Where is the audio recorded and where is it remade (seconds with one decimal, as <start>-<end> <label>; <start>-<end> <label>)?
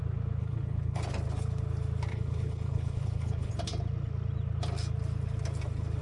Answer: 0.0-0.4 recorded; 0.4-1.0 remade; 1.0-2.1 recorded; 2.1-3.5 remade; 3.5-6.0 recorded